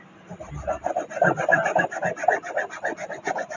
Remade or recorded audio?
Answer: recorded